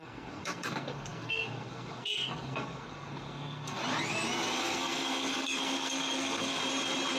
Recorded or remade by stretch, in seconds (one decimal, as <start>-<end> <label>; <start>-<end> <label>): 0.0-3.8 remade; 3.8-4.6 recorded; 4.6-6.6 remade; 6.6-7.2 recorded